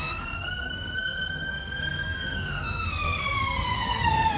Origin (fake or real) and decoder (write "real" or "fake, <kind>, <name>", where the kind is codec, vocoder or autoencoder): fake, codec, SNAC